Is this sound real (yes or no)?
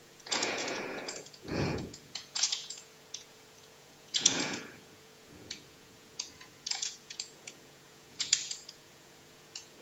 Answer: no